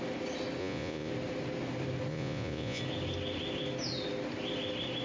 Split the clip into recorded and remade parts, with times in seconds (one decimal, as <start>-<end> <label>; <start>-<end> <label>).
0.0-0.6 recorded; 0.6-1.1 remade; 1.1-2.1 recorded; 2.1-2.8 remade; 2.8-5.0 recorded